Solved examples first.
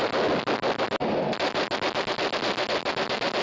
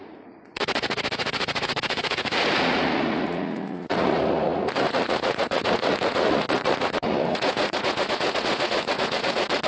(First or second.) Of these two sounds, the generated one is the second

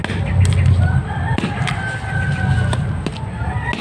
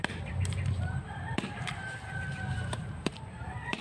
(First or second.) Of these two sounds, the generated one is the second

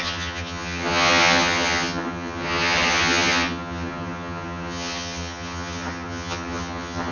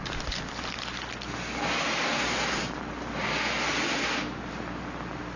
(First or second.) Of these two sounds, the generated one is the first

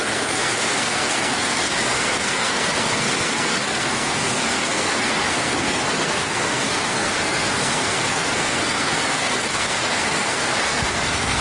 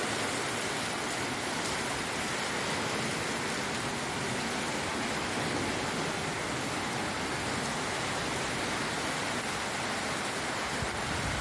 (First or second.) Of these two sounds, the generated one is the first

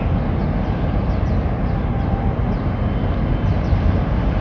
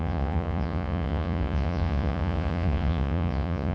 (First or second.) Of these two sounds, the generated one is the second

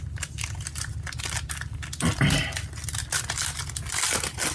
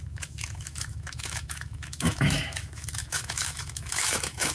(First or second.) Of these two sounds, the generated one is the second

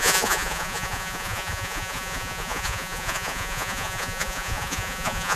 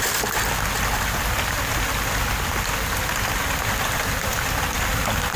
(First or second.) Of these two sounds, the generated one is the first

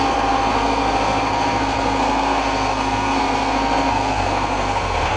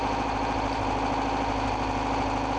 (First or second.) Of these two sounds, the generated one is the first